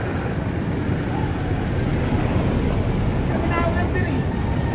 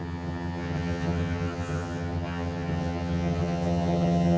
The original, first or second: first